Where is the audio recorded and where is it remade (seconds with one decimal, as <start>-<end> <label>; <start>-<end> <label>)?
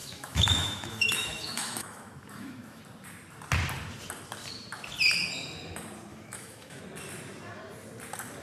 0.0-2.8 remade; 2.8-6.1 recorded; 6.1-6.8 remade; 6.8-8.4 recorded